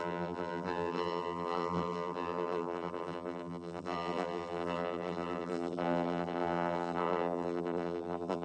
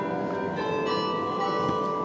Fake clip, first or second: first